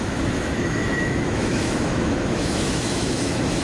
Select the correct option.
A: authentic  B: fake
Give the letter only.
B